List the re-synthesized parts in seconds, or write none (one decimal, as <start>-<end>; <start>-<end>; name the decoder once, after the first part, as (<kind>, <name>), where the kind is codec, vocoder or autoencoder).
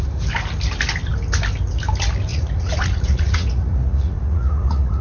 2.3-5.0 (vocoder, Vocos)